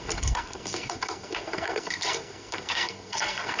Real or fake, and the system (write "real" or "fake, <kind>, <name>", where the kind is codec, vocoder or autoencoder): fake, codec, SNAC